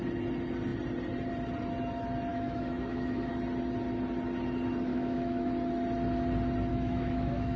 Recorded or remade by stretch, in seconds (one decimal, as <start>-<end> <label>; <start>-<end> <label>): 0.0-2.3 recorded; 2.3-3.3 remade; 3.3-4.9 recorded; 4.9-5.5 remade; 5.5-6.7 recorded; 6.7-7.6 remade